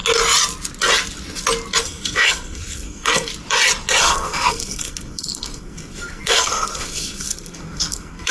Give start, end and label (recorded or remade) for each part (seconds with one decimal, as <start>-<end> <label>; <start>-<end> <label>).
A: 0.0-1.8 recorded; 1.8-3.3 remade; 3.3-4.0 recorded; 4.0-8.3 remade